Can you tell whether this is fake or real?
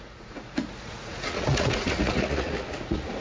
fake